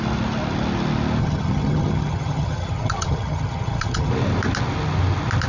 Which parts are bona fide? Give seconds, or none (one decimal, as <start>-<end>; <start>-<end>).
0.0-1.2; 4.1-5.5